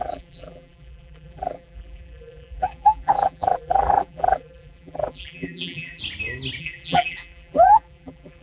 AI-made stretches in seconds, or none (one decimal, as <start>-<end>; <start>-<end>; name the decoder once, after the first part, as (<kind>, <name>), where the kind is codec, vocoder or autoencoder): 0.0-6.0 (vocoder, BigVGAN v2); 6.6-8.4